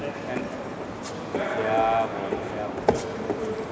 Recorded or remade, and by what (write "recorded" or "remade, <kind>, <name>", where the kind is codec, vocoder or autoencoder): recorded